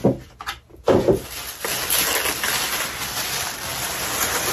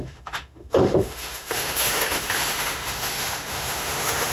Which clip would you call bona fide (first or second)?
first